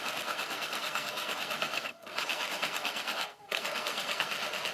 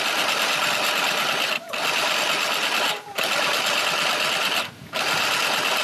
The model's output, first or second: first